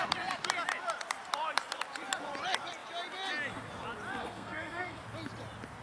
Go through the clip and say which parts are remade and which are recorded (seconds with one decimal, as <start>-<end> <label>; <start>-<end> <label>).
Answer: 0.0-4.2 recorded; 4.2-5.0 remade; 5.0-5.8 recorded